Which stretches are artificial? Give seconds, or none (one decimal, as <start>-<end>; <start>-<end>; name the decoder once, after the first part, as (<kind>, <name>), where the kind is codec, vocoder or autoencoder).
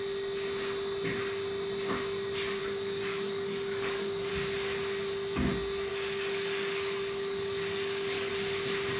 2.6-4.3 (codec, DAC); 5.9-8.3